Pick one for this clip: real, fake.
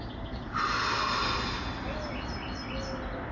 real